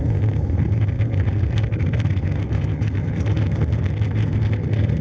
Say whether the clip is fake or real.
fake